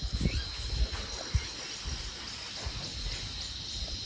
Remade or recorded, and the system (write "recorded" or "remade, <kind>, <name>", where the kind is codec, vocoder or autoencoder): recorded